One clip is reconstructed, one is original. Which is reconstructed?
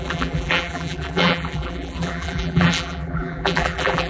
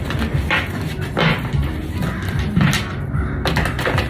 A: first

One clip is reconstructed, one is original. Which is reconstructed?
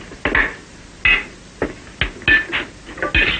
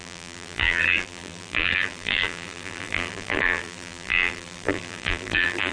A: second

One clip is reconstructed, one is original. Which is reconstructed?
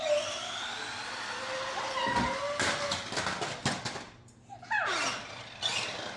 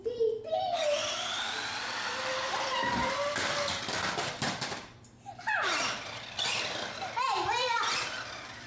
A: second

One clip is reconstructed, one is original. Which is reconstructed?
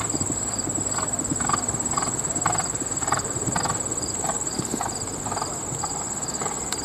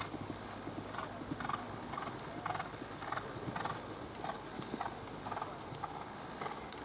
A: first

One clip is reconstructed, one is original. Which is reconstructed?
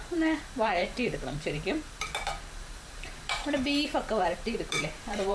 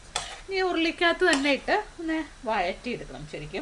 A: first